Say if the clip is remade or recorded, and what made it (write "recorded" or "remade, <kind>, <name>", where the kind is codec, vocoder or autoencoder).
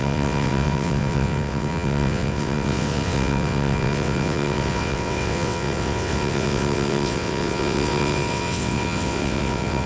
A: remade, vocoder, WaveNeXt